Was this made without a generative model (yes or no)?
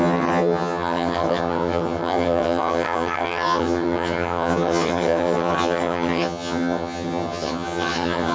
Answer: no